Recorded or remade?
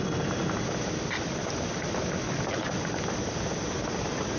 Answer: recorded